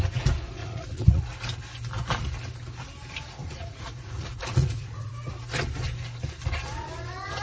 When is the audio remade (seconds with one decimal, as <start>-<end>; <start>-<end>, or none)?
0.6-1.2; 3.4-5.1